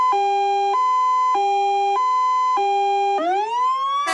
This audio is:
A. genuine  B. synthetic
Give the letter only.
A